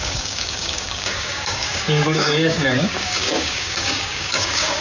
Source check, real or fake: fake